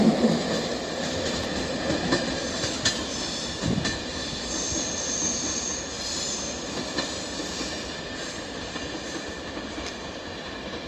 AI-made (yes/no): no